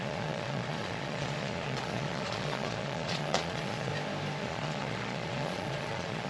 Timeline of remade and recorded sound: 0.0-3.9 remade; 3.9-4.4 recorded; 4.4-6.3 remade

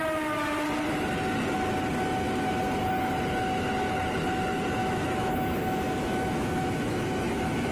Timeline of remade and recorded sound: 0.0-4.8 recorded; 4.8-7.7 remade

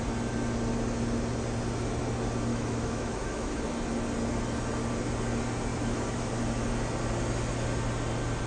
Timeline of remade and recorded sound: 0.0-2.5 recorded; 2.5-3.6 remade; 3.6-5.7 recorded; 5.7-6.3 remade; 6.3-8.5 recorded

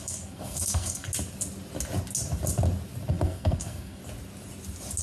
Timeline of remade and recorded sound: 0.0-1.1 remade; 1.1-3.1 recorded; 3.1-4.0 remade; 4.0-5.0 recorded

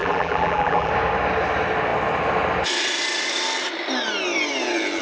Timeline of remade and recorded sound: 0.0-0.9 remade; 0.9-5.0 recorded

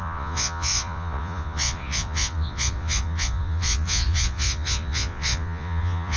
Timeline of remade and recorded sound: 0.0-6.2 remade